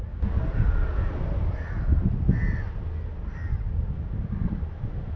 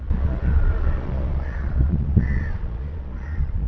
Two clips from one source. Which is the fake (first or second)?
second